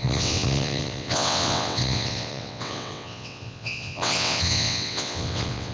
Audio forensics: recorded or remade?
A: remade